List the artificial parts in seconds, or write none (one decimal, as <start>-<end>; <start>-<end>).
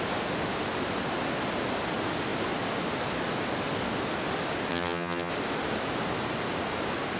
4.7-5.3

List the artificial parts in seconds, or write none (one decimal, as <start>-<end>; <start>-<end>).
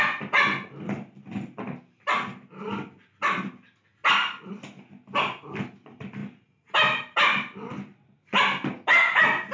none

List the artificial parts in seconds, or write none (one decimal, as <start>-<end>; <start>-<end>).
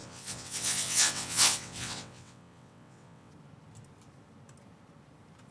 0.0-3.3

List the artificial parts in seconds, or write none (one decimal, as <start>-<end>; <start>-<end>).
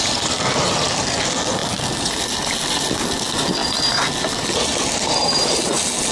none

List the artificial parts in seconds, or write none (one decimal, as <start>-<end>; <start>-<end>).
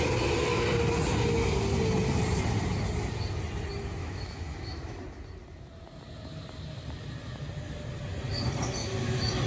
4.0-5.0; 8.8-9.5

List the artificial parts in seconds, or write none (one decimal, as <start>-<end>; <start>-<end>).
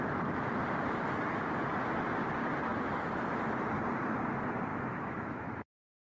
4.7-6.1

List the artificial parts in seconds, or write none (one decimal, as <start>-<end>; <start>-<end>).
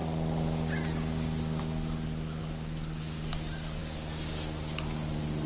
none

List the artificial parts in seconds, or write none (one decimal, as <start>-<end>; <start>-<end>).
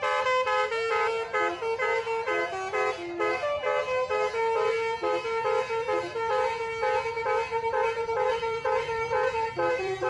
7.5-10.1